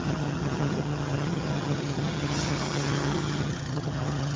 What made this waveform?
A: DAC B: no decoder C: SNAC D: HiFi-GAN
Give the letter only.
D